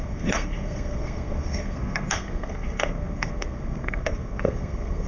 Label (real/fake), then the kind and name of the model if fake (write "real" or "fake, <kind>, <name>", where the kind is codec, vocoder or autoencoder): fake, codec, SNAC